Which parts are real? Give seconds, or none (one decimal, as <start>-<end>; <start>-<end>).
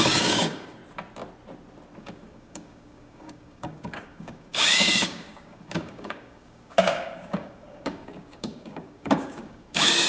0.8-2.0